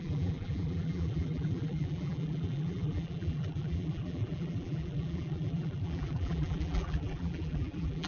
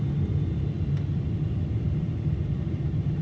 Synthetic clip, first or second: first